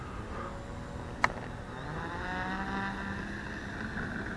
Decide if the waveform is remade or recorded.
recorded